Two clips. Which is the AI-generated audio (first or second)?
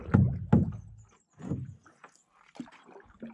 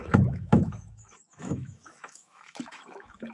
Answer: second